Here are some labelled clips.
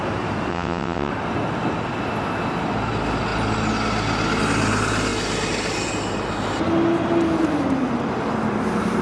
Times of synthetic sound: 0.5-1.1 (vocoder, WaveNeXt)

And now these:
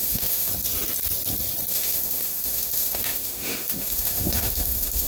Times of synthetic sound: 0.0-0.5 (autoencoder, DAC-VAE); 1.7-5.1